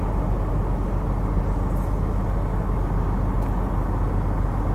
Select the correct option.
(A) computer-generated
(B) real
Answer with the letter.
B